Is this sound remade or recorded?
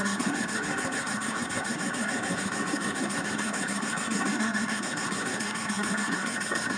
remade